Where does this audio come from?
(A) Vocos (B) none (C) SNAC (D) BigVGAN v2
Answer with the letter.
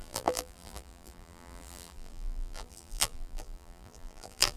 D